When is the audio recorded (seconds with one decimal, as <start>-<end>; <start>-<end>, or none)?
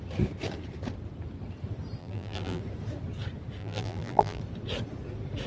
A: 0.0-2.0; 2.6-3.6; 4.4-5.5